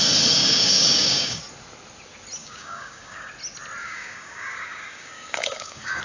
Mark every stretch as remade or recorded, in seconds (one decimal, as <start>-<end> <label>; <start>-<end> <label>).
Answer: 0.0-0.4 recorded; 0.4-1.4 remade; 1.4-2.4 recorded; 2.4-3.3 remade; 3.3-3.8 recorded; 3.8-6.0 remade

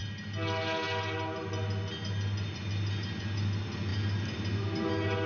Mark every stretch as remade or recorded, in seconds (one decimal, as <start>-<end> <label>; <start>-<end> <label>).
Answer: 0.0-5.3 recorded

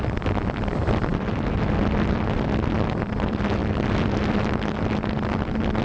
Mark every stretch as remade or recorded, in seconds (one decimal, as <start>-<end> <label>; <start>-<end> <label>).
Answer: 0.0-5.8 remade

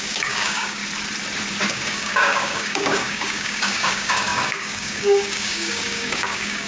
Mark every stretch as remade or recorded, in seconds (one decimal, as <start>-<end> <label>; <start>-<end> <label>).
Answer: 0.0-0.8 remade; 0.8-1.7 recorded; 1.7-6.7 remade

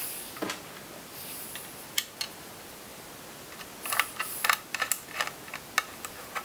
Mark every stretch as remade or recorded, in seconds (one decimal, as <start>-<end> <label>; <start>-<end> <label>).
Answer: 0.0-6.4 recorded

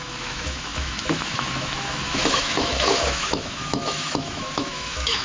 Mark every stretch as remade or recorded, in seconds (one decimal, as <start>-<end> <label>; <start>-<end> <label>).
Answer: 0.0-5.2 remade

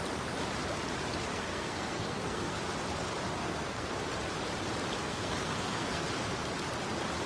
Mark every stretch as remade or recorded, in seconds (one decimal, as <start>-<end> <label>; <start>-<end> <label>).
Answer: 0.0-1.3 recorded; 1.3-2.6 remade; 2.6-3.4 recorded; 3.4-3.9 remade; 3.9-5.0 recorded; 5.0-6.0 remade; 6.0-7.3 recorded